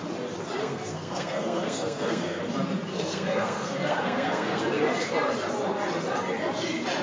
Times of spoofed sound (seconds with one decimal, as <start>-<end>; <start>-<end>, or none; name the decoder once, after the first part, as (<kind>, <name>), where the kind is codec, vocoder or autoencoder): 0.6-2.4 (codec, SNAC); 2.9-4.6